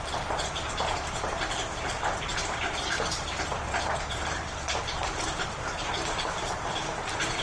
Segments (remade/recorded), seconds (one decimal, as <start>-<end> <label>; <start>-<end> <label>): 0.0-7.4 remade